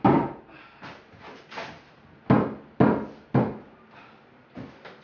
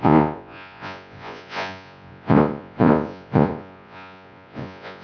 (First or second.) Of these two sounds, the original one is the first